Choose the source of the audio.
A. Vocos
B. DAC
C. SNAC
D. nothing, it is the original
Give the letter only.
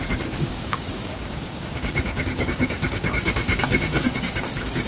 B